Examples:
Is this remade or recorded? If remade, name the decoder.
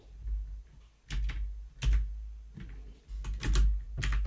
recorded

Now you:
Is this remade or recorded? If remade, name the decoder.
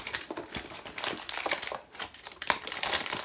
remade, vocoder, BigVGAN v2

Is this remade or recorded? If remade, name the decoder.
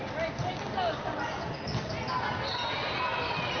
recorded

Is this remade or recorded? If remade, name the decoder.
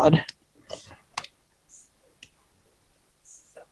recorded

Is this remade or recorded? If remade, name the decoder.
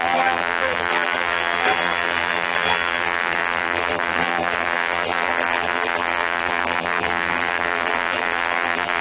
remade, vocoder, BigVGAN v2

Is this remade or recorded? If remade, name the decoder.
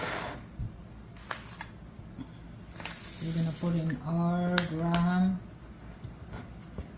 recorded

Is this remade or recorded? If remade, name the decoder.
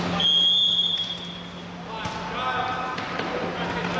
recorded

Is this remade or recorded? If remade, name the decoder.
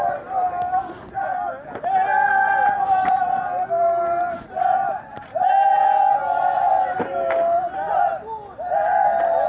recorded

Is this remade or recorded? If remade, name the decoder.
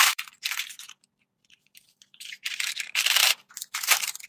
remade, vocoder, BigVGAN v2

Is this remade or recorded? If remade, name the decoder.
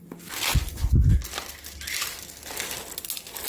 recorded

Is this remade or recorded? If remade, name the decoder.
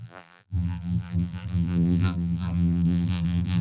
remade, vocoder, BigVGAN v2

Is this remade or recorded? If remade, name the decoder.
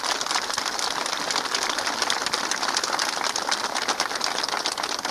recorded